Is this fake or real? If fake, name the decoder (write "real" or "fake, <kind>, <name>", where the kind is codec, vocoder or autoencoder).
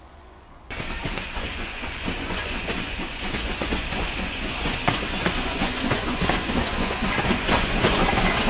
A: fake, vocoder, Vocos